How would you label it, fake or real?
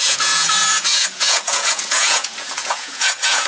fake